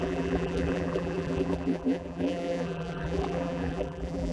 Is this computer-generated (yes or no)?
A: yes